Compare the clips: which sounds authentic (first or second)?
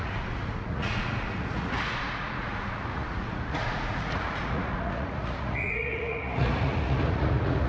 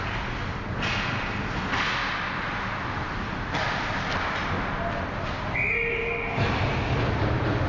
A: second